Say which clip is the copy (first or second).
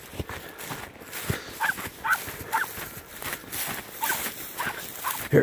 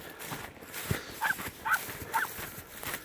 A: second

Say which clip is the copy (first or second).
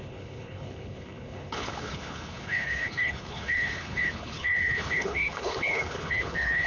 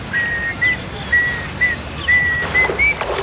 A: first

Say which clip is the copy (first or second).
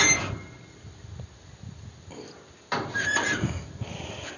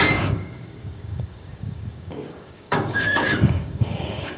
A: second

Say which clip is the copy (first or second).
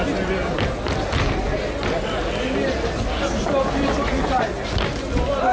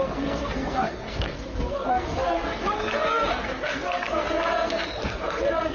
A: second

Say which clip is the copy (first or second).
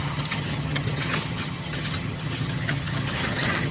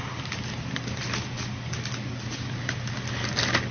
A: first